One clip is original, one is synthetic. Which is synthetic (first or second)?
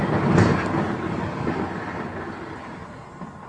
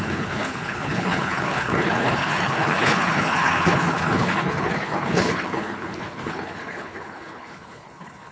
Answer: second